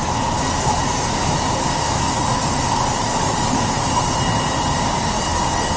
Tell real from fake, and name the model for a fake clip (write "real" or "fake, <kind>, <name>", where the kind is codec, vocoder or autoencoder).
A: real